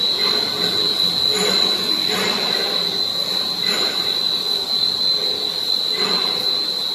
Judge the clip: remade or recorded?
recorded